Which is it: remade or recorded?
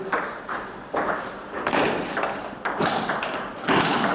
remade